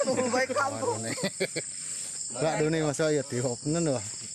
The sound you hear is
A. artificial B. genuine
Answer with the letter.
B